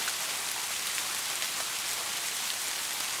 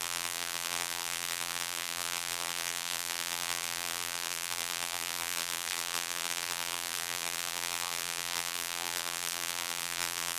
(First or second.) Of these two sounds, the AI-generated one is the second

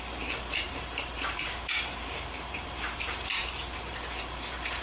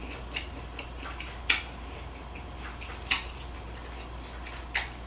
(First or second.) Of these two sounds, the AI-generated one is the first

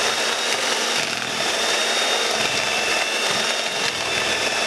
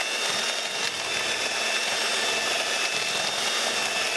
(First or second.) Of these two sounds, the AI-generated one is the first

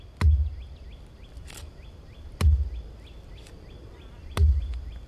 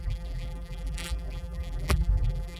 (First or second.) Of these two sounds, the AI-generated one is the second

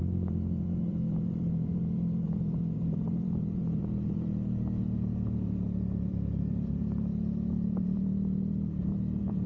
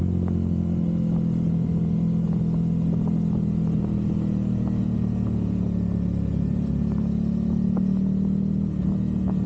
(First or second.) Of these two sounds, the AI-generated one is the first